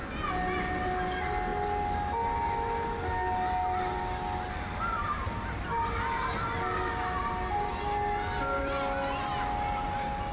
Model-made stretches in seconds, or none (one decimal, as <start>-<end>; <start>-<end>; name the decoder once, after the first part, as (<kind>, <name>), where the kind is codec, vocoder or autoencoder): none